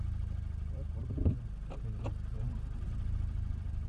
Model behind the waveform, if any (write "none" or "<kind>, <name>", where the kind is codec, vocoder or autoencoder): none